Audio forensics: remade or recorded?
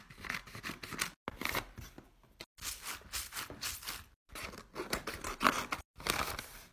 recorded